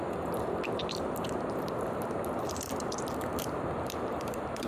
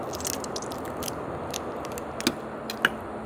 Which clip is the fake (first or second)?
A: first